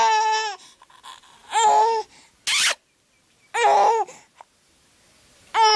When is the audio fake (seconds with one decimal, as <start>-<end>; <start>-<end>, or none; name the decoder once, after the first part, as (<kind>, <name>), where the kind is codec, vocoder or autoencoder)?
none